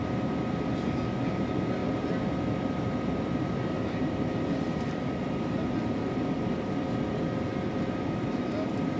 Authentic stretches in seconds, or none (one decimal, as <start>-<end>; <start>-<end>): 0.0-1.8; 5.5-9.0